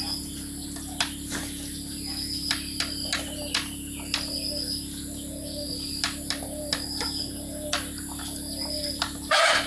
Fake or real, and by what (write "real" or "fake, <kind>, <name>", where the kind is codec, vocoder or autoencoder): real